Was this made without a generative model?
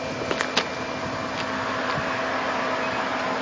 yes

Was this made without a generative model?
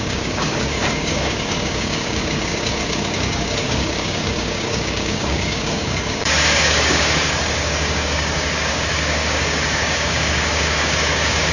no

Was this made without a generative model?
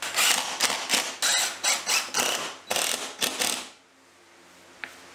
yes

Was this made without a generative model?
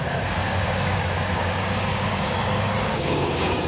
no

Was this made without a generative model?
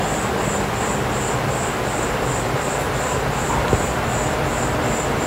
yes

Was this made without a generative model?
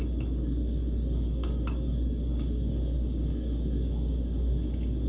no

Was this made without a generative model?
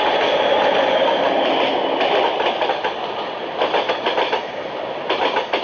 yes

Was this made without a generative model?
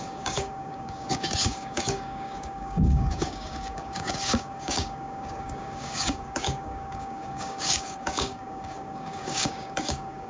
no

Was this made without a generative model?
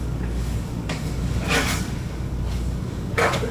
no